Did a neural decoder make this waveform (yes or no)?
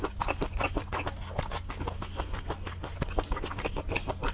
no